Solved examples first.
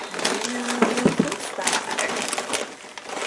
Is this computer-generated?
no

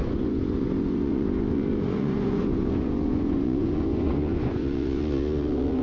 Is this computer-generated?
yes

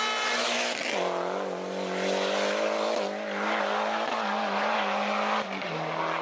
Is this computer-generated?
no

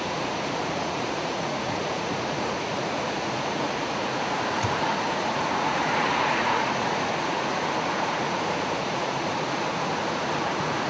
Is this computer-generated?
yes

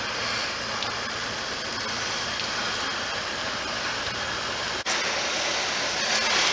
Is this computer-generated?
no